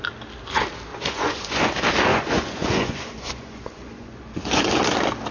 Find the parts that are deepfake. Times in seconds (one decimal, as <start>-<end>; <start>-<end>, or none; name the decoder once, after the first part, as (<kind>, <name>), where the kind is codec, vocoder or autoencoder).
0.9-1.7 (vocoder, Vocos); 2.1-4.6